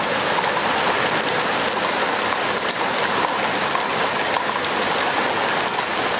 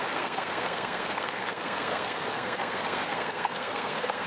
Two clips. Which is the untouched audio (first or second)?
first